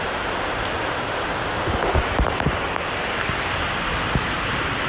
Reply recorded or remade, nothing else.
recorded